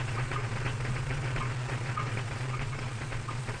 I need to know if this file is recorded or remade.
remade